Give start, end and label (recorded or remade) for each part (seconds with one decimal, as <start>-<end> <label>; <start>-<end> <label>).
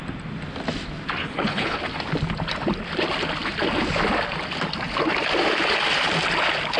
0.0-1.2 recorded; 1.2-1.8 remade; 1.8-6.8 recorded